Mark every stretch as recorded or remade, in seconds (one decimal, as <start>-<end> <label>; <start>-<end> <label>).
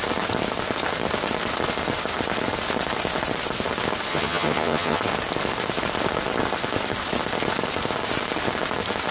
0.0-4.1 recorded; 4.1-5.0 remade; 5.0-9.1 recorded